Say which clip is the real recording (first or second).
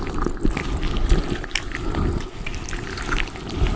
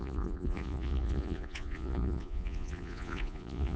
first